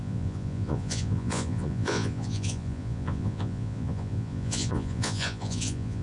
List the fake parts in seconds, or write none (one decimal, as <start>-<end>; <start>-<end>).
0.0-6.0